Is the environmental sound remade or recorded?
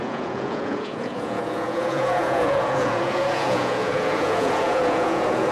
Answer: remade